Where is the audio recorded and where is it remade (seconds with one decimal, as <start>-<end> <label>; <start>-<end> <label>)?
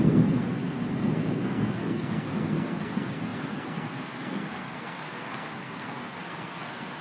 0.0-7.0 remade